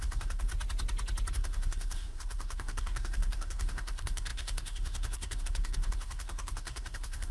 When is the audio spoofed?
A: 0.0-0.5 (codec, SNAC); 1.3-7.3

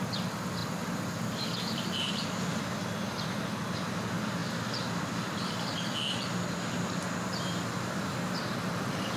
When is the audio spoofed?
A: none

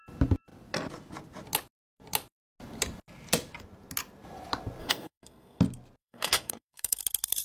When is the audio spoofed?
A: 4.8-5.6 (codec, SNAC); 6.0-7.0

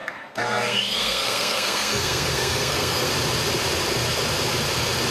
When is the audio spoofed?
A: 0.0-3.1 (codec, SNAC)

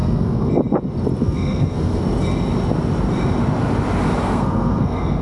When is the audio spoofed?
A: 0.0-0.5 (codec, SNAC); 1.2-2.0; 4.2-5.2

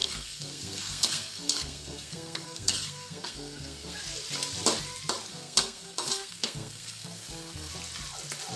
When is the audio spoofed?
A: 0.0-4.0 (codec, SNAC); 5.3-7.7